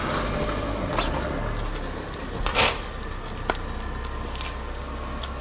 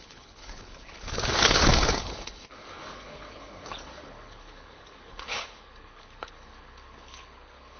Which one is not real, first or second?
second